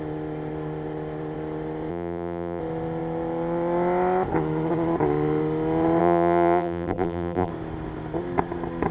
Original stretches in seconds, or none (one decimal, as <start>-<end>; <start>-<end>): 0.0-1.9; 2.6-6.0; 7.5-8.9